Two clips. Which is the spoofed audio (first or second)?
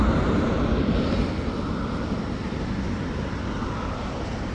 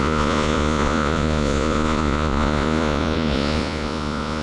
second